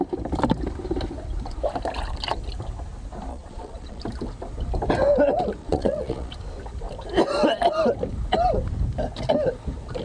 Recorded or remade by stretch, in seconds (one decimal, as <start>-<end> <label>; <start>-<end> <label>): 0.0-3.3 recorded; 3.3-4.0 remade; 4.0-5.6 recorded; 5.6-6.3 remade; 6.3-10.0 recorded